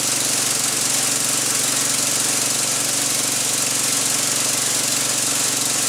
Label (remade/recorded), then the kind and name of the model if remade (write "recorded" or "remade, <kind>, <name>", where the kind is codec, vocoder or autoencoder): recorded